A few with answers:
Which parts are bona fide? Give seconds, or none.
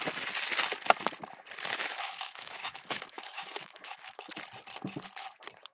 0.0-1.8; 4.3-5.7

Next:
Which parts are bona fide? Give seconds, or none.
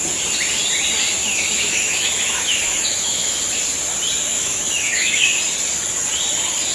0.0-1.2; 3.4-4.3; 5.4-6.7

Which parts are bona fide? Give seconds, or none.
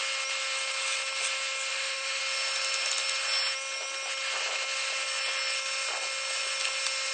0.0-1.7; 2.2-7.1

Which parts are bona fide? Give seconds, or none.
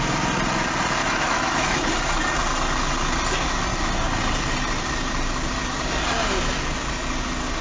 0.0-1.0; 1.9-7.6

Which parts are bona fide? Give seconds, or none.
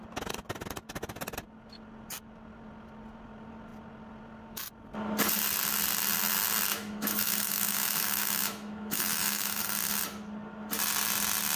0.0-6.7; 9.6-11.6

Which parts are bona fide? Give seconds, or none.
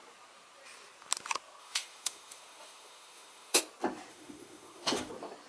0.0-1.6; 3.6-4.1; 5.1-5.5